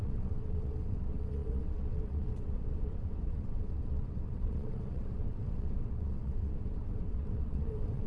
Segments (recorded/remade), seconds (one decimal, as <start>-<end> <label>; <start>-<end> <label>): 0.0-8.1 remade